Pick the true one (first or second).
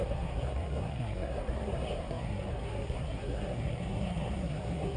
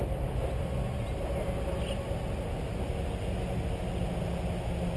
second